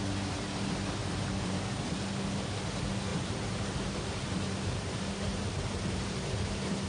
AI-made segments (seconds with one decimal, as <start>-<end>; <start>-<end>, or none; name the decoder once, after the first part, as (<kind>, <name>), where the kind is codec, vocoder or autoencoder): 1.0-1.6 (vocoder, BigVGAN v2); 3.1-6.4